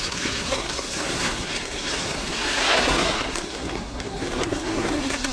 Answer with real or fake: fake